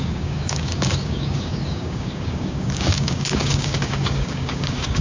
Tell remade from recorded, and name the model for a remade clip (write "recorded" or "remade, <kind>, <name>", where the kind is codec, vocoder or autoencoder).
remade, codec, DAC